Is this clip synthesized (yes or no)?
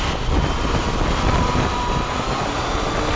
no